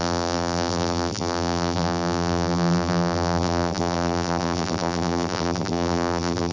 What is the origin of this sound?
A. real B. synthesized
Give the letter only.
B